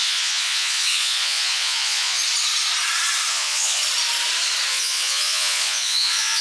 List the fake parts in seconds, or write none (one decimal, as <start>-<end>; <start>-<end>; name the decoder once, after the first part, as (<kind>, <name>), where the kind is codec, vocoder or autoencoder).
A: 0.0-2.2 (vocoder, Vocos); 3.3-3.8; 4.7-6.4